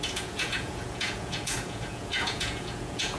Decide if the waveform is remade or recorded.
remade